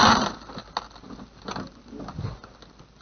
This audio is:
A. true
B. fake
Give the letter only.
A